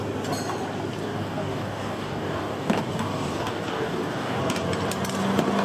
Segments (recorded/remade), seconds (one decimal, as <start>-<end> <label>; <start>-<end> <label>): 0.0-1.0 recorded; 1.0-4.4 remade; 4.4-5.6 recorded